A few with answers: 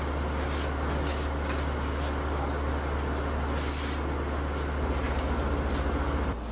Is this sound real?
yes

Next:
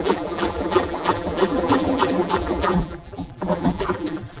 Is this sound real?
no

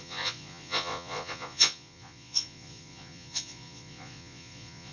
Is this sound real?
no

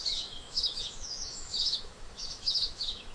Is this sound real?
no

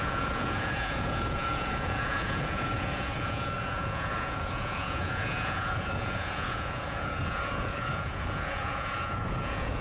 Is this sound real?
no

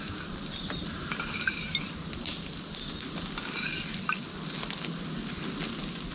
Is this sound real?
yes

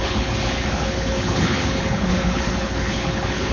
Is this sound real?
no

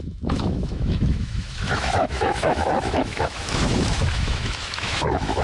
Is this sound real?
no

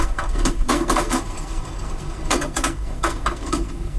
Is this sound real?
no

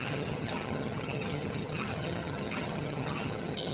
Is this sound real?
no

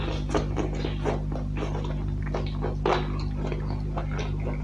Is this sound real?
yes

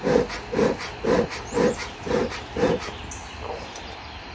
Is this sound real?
yes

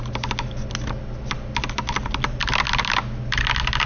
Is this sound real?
yes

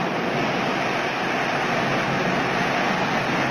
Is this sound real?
yes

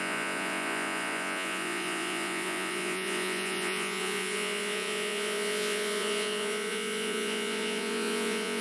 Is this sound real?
no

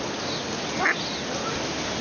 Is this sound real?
yes